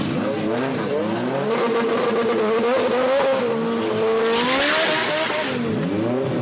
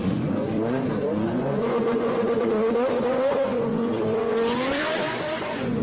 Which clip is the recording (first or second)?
first